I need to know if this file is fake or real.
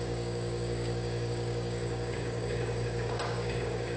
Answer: fake